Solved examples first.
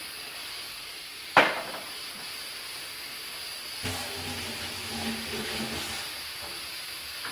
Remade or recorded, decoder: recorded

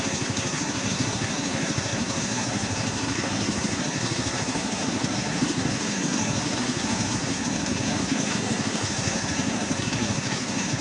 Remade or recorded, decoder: remade, codec, SNAC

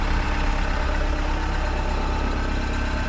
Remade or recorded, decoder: recorded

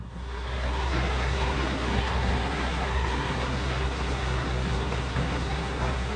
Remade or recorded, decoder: remade, codec, SNAC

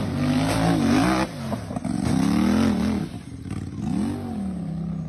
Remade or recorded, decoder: recorded